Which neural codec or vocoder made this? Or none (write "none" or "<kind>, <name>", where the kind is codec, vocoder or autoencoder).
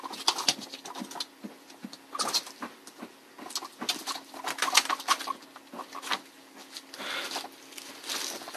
none